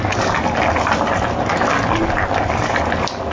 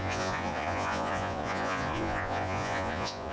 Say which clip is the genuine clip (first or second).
first